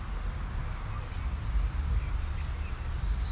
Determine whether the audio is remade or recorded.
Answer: recorded